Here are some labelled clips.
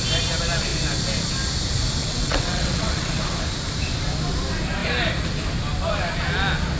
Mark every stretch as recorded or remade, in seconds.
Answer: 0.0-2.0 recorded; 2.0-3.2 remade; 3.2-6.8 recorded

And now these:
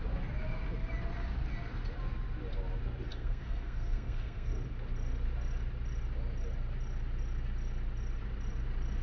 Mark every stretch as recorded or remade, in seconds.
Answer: 0.0-3.1 recorded; 3.1-4.5 remade; 4.5-9.0 recorded

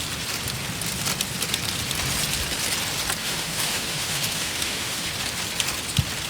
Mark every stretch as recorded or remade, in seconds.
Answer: 0.0-3.2 recorded; 3.2-5.1 remade; 5.1-6.3 recorded

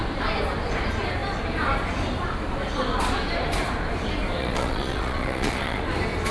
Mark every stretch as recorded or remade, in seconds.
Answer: 0.0-4.4 recorded; 4.4-5.8 remade; 5.8-6.3 recorded

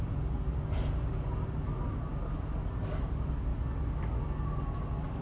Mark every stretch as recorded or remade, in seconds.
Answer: 0.0-5.2 recorded

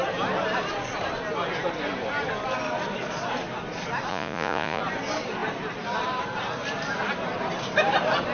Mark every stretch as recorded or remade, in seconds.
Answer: 0.0-4.1 recorded; 4.1-4.8 remade; 4.8-8.3 recorded

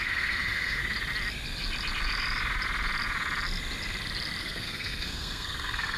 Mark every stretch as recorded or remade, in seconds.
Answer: 0.0-0.8 remade; 0.8-4.4 recorded; 4.4-6.0 remade